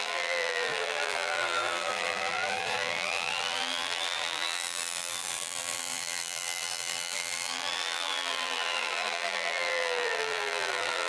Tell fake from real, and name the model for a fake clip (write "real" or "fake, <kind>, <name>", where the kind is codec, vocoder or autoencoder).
fake, vocoder, BigVGAN v2